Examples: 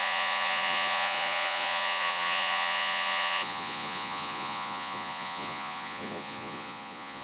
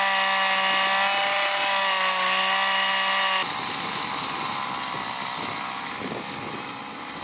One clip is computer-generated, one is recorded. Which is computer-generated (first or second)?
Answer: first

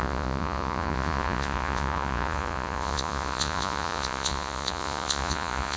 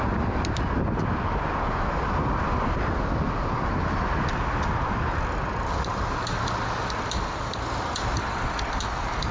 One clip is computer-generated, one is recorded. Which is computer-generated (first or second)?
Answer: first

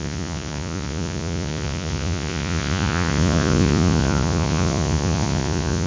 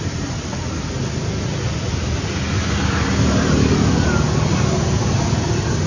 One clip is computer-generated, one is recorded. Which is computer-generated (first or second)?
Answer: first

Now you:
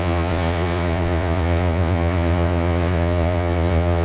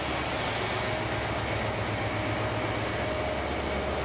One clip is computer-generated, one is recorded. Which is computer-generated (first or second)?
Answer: first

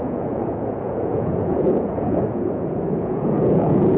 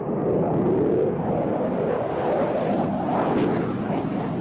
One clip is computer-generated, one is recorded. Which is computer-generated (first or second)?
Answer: first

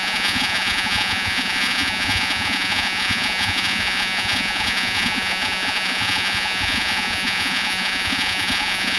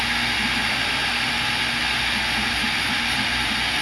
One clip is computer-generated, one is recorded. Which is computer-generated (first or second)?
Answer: first